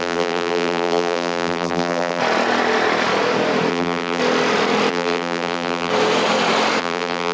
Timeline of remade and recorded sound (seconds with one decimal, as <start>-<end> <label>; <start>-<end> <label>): 0.0-2.2 remade; 2.2-3.7 recorded; 3.7-4.2 remade; 4.2-4.9 recorded; 4.9-5.9 remade; 5.9-6.8 recorded; 6.8-7.3 remade